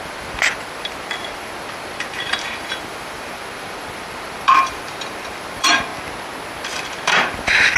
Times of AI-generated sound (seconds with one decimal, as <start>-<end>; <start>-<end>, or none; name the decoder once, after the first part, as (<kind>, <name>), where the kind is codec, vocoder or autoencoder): 0.0-5.9 (vocoder, BigVGAN v2); 6.6-7.8